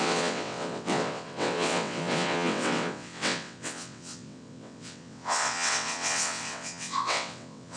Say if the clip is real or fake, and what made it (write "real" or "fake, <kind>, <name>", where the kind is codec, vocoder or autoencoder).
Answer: fake, vocoder, WaveNeXt